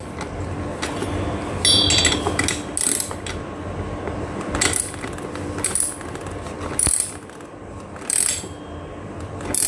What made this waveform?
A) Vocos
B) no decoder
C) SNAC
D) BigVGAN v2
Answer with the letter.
B